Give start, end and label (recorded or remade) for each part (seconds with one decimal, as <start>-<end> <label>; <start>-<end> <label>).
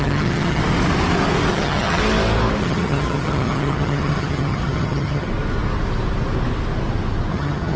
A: 0.0-0.6 remade; 0.6-1.5 recorded; 1.5-2.0 remade; 2.0-2.6 recorded; 2.6-5.3 remade; 5.3-7.3 recorded; 7.3-7.8 remade